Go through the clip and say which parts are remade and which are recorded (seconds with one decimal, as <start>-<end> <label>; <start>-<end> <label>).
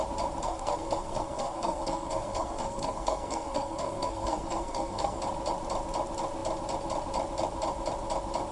0.0-0.4 recorded; 0.4-5.2 remade; 5.2-8.5 recorded